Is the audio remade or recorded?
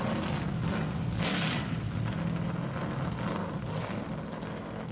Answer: recorded